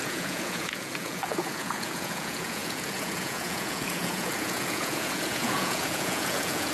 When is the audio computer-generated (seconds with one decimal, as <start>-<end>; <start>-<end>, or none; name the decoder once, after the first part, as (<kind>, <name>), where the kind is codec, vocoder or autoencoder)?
0.0-6.7 (vocoder, Vocos)